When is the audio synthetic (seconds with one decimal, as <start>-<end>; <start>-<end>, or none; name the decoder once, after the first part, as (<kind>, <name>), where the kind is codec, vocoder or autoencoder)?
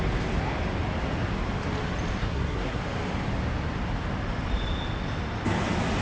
2.2-2.8 (codec, SNAC)